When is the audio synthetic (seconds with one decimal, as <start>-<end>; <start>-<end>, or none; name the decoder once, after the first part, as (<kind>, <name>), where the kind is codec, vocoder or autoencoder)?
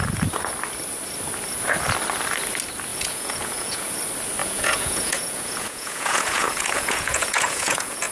2.9-3.9 (vocoder, Vocos); 4.4-8.1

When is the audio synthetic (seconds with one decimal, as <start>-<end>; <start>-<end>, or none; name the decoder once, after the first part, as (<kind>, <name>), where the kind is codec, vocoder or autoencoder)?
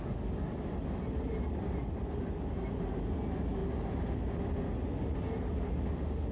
none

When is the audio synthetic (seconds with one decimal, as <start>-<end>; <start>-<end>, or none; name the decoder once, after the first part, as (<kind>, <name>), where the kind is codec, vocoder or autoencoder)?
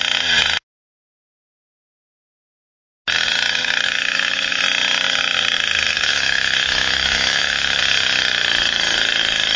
3.6-4.6 (autoencoder, DAC-VAE); 5.9-7.8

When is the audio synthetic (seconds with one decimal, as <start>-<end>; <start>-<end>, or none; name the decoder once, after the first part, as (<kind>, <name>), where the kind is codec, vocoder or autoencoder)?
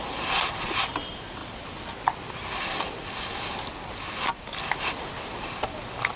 none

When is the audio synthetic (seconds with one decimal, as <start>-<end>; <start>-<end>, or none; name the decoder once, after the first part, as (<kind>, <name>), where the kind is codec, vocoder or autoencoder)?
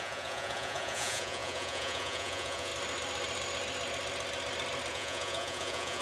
0.0-2.7 (vocoder, Vocos); 4.9-6.0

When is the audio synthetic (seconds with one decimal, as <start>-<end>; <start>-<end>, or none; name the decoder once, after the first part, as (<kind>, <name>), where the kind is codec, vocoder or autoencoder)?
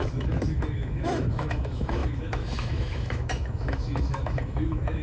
0.0-5.0 (autoencoder, DAC-VAE)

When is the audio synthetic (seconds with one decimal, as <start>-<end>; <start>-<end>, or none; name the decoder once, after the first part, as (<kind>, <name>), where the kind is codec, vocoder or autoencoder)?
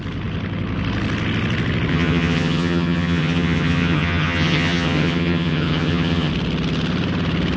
1.9-6.3 (vocoder, HiFi-GAN)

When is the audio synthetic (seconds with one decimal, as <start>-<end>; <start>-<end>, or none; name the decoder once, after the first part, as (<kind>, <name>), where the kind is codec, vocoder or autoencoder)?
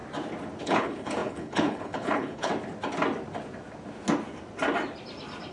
0.6-2.5 (codec, HILCodec)